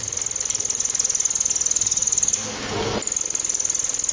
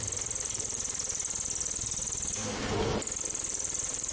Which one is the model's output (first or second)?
second